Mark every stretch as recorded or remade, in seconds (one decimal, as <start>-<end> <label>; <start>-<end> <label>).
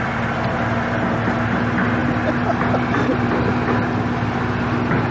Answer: 0.0-5.1 recorded